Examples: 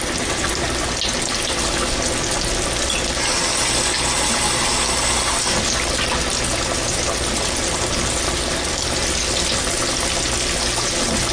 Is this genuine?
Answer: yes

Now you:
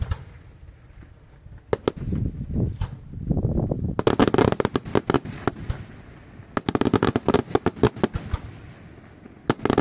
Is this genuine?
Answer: yes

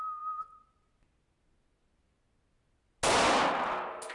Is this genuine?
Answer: yes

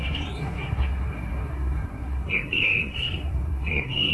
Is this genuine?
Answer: no